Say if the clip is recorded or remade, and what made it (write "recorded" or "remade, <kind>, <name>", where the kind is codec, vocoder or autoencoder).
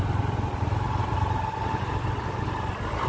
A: recorded